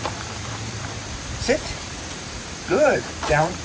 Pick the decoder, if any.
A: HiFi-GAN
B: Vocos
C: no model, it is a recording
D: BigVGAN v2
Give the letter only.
D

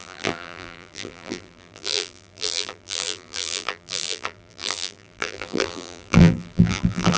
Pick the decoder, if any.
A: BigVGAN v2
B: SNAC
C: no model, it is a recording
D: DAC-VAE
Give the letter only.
A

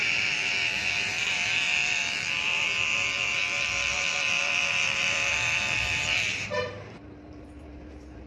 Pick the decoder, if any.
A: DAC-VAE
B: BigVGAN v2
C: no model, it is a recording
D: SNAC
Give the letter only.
B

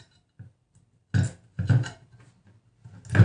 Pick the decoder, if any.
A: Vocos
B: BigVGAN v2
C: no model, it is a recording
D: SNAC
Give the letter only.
C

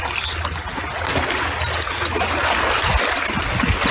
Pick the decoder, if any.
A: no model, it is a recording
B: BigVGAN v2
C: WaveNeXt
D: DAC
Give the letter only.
A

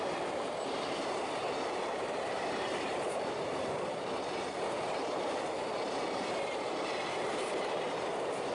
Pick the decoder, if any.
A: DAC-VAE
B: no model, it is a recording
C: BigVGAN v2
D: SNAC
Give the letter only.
C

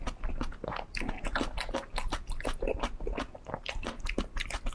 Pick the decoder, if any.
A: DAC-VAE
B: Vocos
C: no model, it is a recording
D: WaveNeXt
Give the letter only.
C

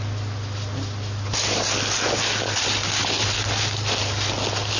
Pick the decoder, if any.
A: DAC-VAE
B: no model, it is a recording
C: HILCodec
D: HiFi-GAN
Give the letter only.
B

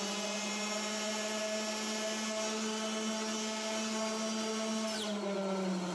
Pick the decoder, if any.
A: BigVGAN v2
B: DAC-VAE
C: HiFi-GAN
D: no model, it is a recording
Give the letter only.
D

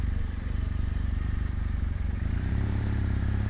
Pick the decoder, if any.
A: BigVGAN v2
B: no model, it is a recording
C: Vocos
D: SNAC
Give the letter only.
A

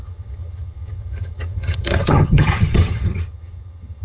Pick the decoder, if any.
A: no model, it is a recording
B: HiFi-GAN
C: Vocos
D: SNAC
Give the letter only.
B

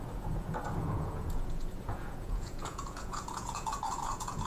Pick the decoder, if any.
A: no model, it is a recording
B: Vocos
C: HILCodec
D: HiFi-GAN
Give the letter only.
B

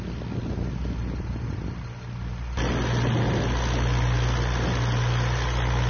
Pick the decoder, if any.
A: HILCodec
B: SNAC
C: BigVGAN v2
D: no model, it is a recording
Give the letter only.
D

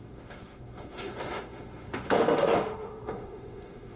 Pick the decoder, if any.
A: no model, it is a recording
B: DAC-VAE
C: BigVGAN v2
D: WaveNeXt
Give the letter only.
B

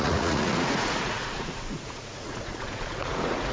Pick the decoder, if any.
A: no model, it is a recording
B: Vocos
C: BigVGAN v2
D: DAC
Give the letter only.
B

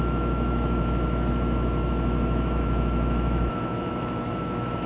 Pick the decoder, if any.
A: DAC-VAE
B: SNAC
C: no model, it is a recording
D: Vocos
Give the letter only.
A